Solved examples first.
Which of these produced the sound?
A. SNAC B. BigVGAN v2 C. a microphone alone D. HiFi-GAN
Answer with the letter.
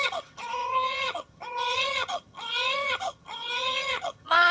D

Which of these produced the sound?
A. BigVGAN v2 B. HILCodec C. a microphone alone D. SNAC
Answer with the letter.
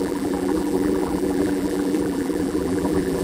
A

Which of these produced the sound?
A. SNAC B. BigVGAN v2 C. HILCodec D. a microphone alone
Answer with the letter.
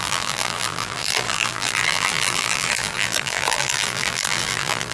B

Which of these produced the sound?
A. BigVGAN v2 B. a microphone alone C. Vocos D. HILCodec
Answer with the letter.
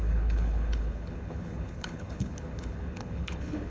D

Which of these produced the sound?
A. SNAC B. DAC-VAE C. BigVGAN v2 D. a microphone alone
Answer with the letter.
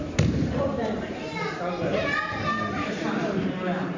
C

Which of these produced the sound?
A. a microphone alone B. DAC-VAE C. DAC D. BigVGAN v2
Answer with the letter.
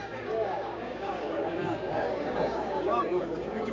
C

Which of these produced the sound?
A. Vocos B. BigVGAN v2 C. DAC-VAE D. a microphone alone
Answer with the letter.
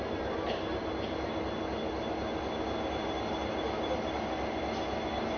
D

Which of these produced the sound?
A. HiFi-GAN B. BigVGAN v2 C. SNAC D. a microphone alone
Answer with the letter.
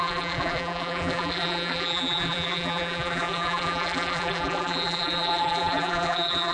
B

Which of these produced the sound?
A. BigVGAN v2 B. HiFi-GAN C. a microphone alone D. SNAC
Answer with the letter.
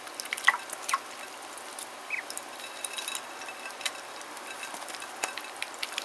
A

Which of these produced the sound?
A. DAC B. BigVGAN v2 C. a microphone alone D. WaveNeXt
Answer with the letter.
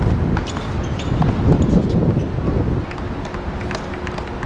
C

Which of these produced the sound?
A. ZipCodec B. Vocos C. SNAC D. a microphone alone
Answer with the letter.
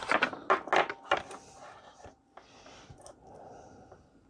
D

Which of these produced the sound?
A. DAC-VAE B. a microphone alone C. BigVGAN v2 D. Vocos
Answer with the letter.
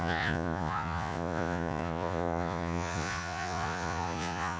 D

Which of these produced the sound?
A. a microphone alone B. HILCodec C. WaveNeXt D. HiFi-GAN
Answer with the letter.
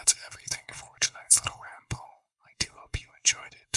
B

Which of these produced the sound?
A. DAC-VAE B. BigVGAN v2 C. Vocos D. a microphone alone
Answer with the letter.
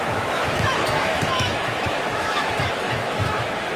A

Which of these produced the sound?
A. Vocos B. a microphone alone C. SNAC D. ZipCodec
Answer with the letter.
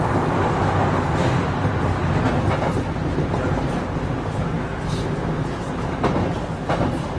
B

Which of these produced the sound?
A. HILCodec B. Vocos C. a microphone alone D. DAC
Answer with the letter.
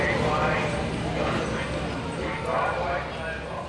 C